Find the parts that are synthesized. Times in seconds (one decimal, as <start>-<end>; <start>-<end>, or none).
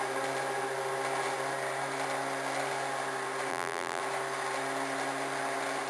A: 3.5-4.0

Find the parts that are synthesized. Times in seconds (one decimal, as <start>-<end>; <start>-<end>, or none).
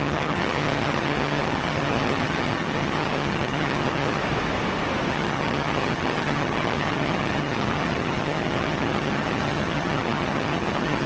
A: 0.0-4.2; 5.1-11.1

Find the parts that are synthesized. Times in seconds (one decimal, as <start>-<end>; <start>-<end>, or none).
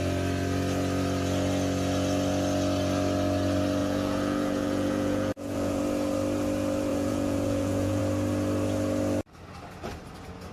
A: 3.8-5.8; 6.9-8.0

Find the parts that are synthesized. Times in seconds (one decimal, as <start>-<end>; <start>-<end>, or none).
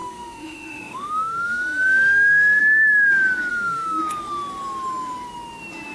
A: 0.0-2.6; 3.5-4.0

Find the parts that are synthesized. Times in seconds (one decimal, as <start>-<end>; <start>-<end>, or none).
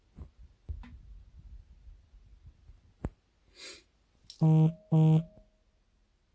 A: none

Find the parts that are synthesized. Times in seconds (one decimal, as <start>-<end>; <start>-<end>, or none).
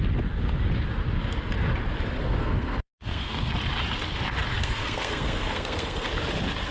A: 2.2-3.5; 4.6-6.1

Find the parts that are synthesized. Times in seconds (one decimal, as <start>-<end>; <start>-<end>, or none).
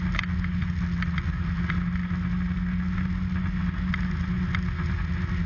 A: none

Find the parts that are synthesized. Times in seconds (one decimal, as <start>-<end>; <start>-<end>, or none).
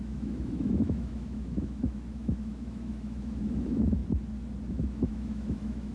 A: 0.0-4.0; 4.7-5.9